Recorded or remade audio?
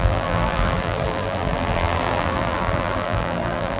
remade